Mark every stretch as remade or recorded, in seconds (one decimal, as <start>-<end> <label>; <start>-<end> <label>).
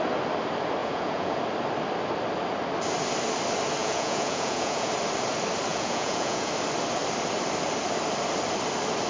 0.0-0.8 recorded; 0.8-1.4 remade; 1.4-3.8 recorded; 3.8-4.9 remade; 4.9-5.7 recorded; 5.7-6.5 remade; 6.5-9.1 recorded